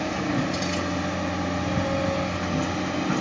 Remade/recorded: recorded